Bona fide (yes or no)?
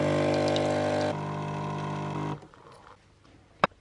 yes